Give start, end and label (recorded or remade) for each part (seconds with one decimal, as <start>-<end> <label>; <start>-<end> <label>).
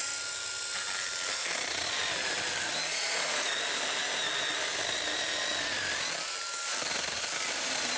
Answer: 0.0-2.9 recorded; 2.9-3.5 remade; 3.5-8.0 recorded